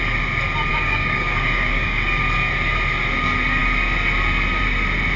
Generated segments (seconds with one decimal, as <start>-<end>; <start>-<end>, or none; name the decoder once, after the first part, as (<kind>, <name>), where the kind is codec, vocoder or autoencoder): 0.7-2.2 (codec, DAC)